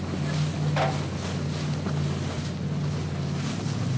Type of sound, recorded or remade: recorded